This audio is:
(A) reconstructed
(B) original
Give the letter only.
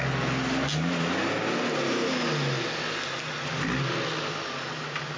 B